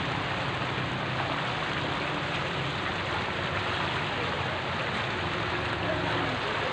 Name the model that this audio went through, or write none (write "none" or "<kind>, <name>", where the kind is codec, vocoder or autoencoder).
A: none